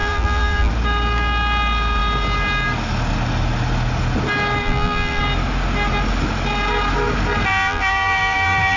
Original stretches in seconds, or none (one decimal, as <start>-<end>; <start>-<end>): 0.7-4.6; 5.2-7.5